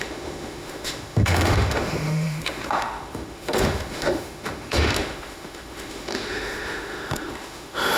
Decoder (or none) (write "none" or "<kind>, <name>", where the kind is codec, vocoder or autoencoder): autoencoder, DAC-VAE